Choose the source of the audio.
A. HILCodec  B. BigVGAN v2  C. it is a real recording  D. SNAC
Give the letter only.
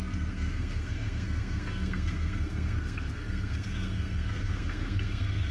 D